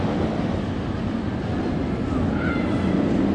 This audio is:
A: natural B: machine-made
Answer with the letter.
A